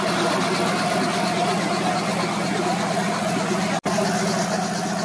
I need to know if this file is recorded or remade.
recorded